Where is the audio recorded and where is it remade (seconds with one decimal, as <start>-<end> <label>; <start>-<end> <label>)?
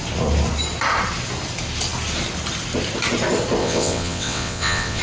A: 0.0-3.6 recorded; 3.6-5.0 remade